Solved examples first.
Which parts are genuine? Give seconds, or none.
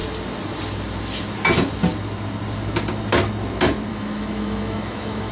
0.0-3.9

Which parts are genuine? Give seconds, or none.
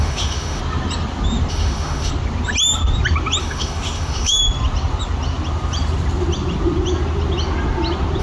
0.6-1.5; 2.1-3.4; 4.4-8.2